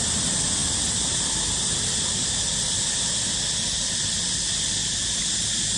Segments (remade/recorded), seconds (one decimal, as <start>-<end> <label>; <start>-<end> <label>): 0.0-5.8 recorded